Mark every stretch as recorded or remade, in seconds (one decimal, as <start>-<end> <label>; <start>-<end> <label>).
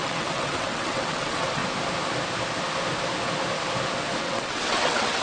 0.0-1.6 remade; 1.6-4.2 recorded; 4.2-5.2 remade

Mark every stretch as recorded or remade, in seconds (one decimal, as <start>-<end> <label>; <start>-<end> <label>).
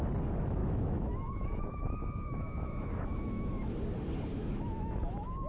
0.0-0.6 recorded; 0.6-3.7 remade; 3.7-4.3 recorded; 4.3-5.5 remade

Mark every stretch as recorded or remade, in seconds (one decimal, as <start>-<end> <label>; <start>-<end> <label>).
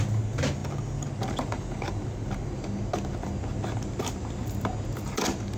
0.0-5.6 recorded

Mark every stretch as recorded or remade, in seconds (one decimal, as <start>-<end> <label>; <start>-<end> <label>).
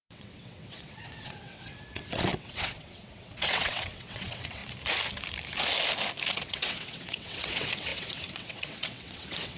0.0-4.6 remade; 4.6-6.3 recorded; 6.3-9.6 remade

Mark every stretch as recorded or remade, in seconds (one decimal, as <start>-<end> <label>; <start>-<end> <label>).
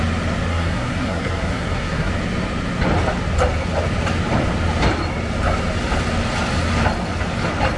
0.0-0.5 recorded; 0.5-2.1 remade; 2.1-7.8 recorded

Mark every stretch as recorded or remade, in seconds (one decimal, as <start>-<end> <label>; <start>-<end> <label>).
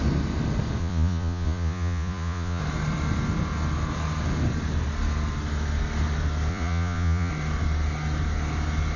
0.0-0.8 recorded; 0.8-2.6 remade; 2.6-6.5 recorded; 6.5-7.3 remade; 7.3-9.0 recorded